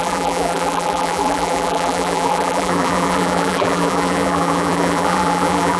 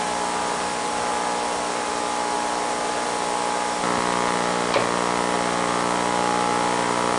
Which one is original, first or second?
second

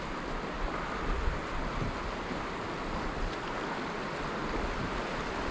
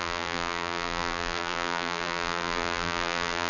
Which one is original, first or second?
first